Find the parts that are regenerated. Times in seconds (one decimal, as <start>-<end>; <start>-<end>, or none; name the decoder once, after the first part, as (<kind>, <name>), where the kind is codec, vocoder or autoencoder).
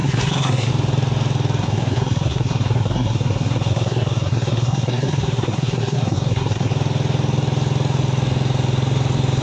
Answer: 0.0-0.7 (codec, SNAC); 1.6-6.7